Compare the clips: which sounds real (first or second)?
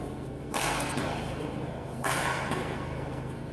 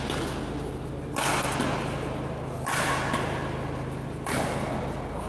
second